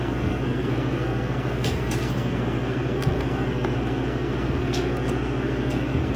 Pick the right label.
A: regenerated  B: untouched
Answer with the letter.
A